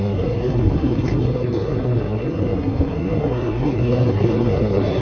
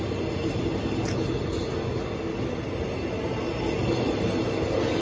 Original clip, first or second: second